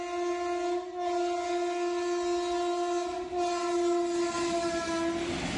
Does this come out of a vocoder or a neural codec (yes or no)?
no